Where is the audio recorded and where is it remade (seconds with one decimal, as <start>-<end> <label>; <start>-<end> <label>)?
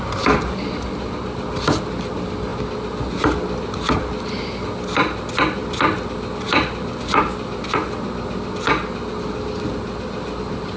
0.0-10.8 recorded